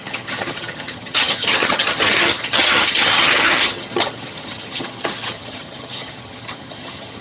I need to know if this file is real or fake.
fake